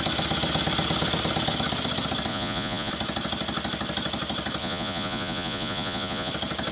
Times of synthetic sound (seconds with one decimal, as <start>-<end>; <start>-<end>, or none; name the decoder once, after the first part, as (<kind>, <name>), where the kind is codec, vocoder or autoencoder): 2.3-2.9 (vocoder, Vocos); 4.6-6.3